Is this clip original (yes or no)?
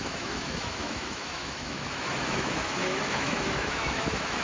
no